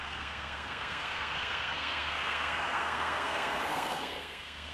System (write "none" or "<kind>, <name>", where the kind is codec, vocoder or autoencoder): codec, SNAC